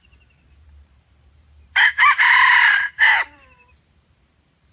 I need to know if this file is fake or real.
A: fake